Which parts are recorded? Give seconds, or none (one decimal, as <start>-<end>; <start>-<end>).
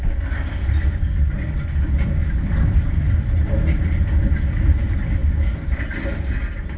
0.0-2.2; 3.0-6.8